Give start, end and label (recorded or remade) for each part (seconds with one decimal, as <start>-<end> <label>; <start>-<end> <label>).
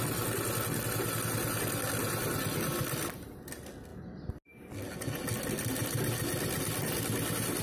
0.0-7.6 recorded